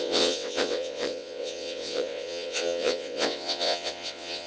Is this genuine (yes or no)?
no